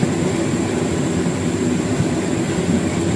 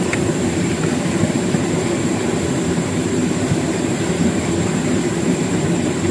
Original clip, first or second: first